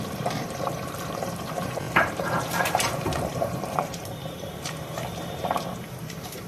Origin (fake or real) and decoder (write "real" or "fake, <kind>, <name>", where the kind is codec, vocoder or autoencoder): fake, vocoder, BigVGAN v2